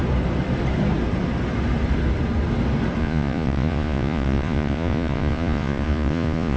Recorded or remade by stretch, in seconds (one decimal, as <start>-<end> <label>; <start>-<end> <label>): 0.0-3.0 recorded; 3.0-6.6 remade